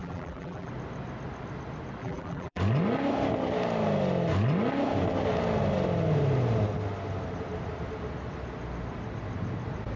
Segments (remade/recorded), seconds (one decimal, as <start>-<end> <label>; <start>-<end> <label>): 0.0-0.7 remade; 0.7-2.0 recorded; 2.0-2.6 remade; 2.6-10.0 recorded